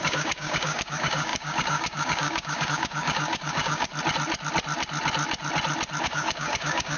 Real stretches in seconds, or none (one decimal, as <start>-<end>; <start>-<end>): 3.9-6.0

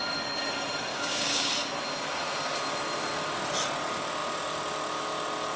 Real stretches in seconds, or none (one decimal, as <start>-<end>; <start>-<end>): 0.0-0.9; 1.5-5.6

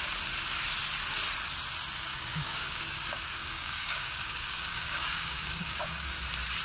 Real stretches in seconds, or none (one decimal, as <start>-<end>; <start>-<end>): 0.0-2.1; 6.1-6.6